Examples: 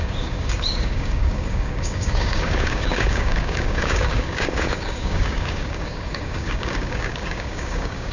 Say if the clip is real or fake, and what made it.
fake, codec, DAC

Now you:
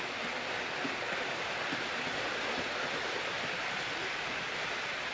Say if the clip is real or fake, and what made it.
fake, vocoder, BigVGAN v2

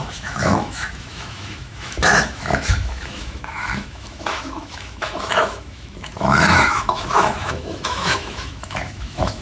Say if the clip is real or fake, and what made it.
fake, autoencoder, DAC-VAE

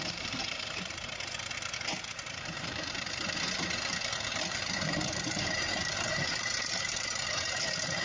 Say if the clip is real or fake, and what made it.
fake, vocoder, BigVGAN v2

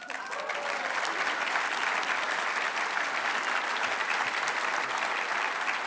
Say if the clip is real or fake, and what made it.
real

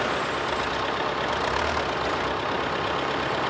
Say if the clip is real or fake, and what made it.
real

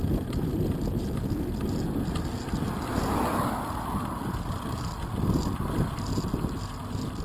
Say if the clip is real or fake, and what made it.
real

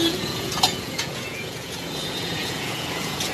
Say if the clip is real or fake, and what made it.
fake, vocoder, Vocos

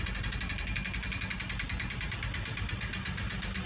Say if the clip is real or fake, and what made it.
real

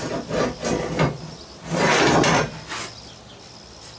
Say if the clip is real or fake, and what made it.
real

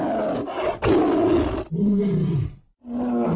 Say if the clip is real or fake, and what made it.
real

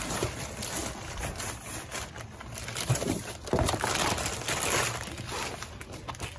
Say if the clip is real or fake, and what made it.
real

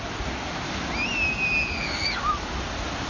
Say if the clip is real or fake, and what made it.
real